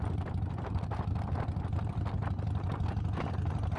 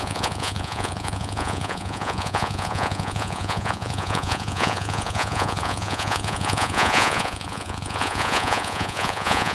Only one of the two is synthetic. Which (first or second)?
second